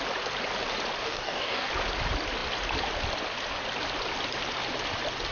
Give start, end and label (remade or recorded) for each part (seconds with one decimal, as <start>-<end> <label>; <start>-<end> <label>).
0.0-1.0 recorded; 1.0-1.7 remade; 1.7-5.3 recorded